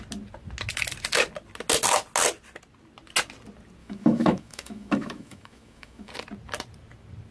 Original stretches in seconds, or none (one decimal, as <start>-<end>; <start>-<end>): 0.0-3.8; 6.1-7.3